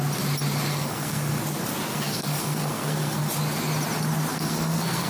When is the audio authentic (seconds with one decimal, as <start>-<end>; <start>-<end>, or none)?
0.0-0.7; 1.4-1.9; 3.2-4.3